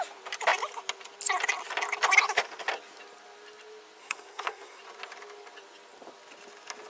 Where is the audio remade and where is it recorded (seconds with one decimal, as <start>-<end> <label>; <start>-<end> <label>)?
0.0-4.0 recorded; 4.0-4.8 remade; 4.8-6.9 recorded